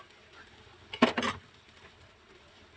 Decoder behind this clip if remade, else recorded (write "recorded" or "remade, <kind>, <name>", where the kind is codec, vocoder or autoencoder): recorded